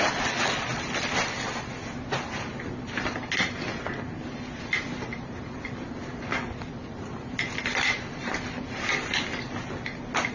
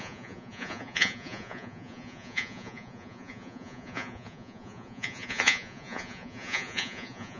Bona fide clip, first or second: first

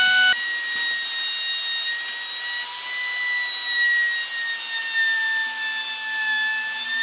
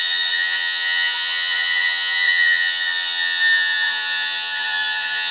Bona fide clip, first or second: first